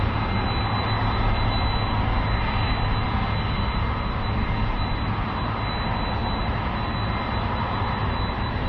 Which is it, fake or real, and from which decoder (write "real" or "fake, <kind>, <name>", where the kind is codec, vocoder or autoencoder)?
real